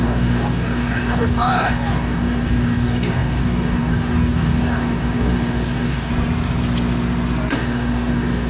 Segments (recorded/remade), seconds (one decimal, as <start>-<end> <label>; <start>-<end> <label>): 0.0-6.1 remade; 6.1-7.5 recorded; 7.5-8.5 remade